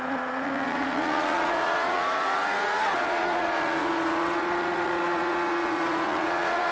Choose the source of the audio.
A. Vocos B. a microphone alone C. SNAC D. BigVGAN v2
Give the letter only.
A